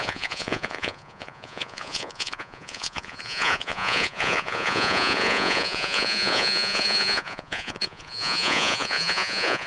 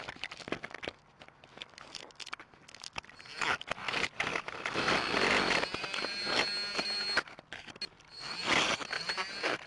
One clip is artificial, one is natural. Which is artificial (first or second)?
first